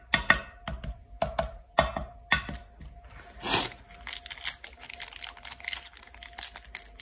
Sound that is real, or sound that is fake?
real